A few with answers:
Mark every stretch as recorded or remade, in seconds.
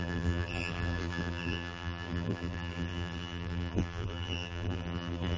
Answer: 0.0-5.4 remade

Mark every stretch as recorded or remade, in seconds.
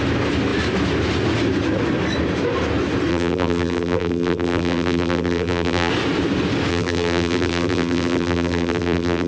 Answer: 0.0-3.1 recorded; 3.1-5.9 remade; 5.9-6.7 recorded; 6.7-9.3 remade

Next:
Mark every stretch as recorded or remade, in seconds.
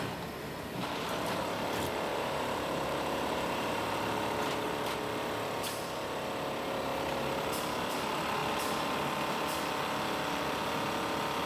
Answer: 0.0-2.1 recorded; 2.1-4.0 remade; 4.0-11.5 recorded